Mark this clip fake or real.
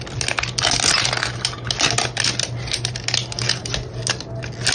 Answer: real